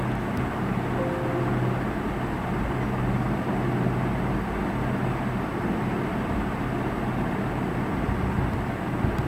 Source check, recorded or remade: recorded